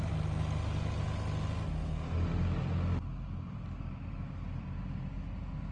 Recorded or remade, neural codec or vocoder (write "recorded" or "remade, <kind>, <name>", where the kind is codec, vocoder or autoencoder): recorded